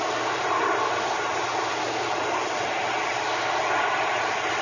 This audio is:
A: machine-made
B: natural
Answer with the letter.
B